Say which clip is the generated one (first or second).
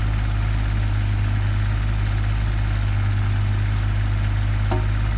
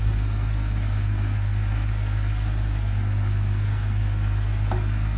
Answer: second